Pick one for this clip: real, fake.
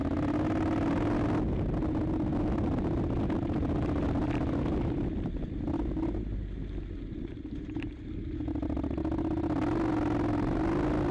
real